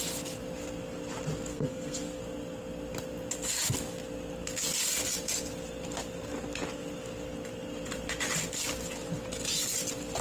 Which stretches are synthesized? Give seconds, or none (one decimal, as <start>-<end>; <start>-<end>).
1.5-2.2